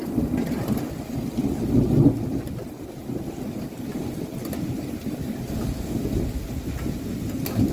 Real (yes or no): yes